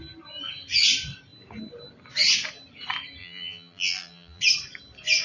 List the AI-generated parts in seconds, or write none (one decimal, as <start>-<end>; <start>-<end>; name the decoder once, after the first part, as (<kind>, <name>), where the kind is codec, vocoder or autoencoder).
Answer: 3.2-4.4 (vocoder, BigVGAN v2)

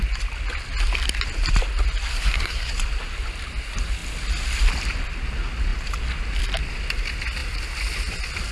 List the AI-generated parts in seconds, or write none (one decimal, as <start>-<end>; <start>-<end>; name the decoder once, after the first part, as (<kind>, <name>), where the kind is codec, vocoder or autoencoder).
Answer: 2.1-2.7 (codec, SNAC)

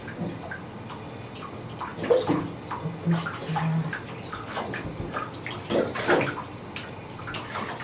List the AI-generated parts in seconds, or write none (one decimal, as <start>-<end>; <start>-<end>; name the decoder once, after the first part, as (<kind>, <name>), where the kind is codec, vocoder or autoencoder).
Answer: none